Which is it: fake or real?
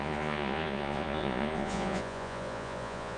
fake